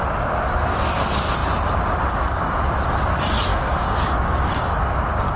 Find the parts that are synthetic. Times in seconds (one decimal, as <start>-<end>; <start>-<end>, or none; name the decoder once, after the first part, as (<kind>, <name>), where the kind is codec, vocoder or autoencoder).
3.5-4.8 (codec, DAC)